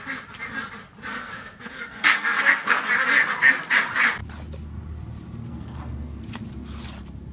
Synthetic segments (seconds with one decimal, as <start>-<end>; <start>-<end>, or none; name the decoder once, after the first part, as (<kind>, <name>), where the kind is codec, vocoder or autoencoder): 1.1-2.9 (codec, SNAC); 5.4-6.2